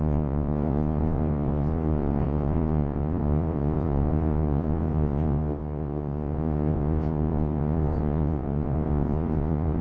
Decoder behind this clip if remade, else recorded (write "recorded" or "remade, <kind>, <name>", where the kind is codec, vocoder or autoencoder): remade, vocoder, Vocos